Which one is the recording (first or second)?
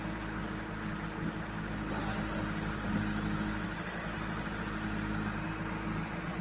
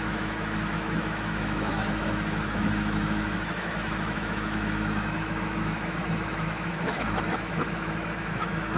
first